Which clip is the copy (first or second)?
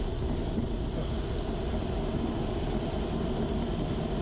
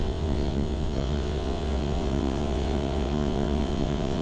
second